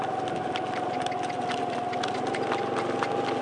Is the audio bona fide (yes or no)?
yes